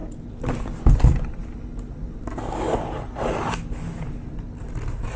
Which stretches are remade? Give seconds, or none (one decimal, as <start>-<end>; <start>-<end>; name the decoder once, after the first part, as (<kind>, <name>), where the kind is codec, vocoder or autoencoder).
none